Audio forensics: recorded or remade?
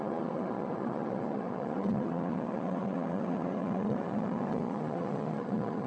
remade